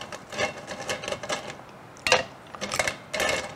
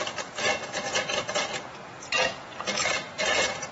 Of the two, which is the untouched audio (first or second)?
first